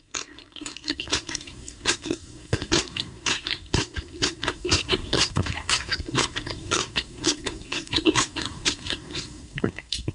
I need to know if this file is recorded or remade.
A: remade